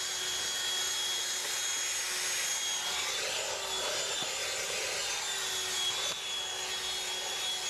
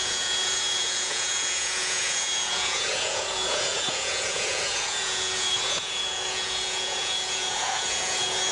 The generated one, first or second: second